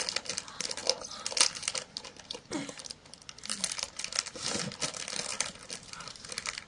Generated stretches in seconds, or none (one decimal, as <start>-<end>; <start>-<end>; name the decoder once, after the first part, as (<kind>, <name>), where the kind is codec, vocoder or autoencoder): none